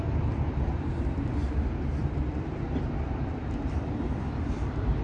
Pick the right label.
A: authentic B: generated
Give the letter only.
B